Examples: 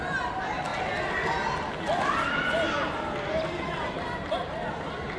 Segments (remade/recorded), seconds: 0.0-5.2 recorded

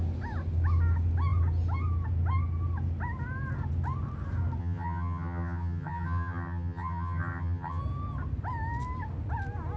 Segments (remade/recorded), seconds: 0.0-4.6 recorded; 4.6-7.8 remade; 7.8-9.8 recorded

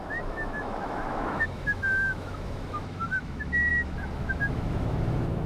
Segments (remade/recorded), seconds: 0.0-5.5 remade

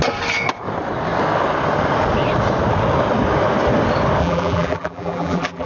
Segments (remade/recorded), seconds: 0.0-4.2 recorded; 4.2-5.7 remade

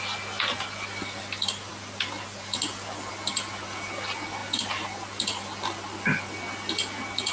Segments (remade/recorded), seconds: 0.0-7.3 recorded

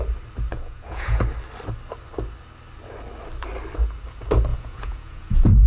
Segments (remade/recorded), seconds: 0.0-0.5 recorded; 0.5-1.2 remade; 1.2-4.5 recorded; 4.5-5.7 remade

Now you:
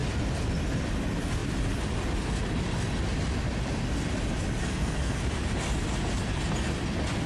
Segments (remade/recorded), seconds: 0.0-4.6 recorded; 4.6-5.2 remade; 5.2-7.3 recorded